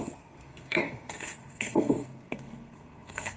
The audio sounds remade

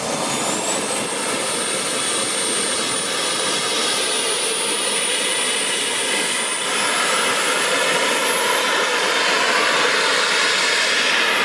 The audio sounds recorded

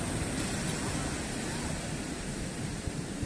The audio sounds recorded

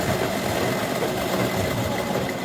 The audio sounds recorded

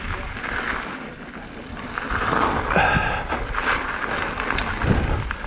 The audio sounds recorded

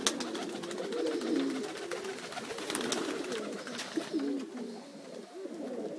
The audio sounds recorded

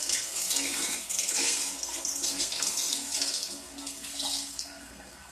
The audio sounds remade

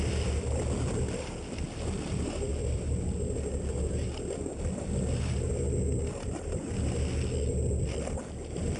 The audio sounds recorded